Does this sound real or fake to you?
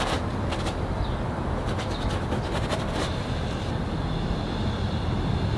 fake